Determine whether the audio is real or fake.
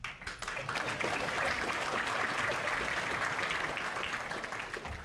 real